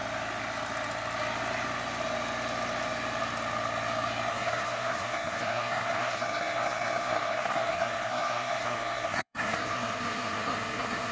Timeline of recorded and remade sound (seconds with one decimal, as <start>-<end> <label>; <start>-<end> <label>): 0.0-4.3 recorded; 4.3-11.1 remade